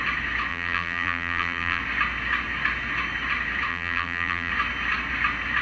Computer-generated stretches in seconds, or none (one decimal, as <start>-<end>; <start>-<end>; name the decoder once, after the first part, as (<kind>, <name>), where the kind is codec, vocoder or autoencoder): 0.5-1.8 (vocoder, BigVGAN v2); 3.7-4.5